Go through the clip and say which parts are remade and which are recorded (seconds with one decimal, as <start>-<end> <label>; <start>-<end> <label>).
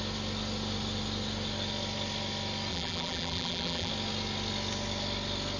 0.0-2.7 recorded; 2.7-3.9 remade; 3.9-5.6 recorded